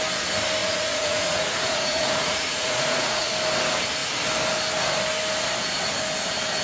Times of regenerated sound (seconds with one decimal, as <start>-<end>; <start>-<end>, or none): 0.6-3.3